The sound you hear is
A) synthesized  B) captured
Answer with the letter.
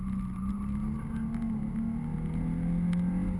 B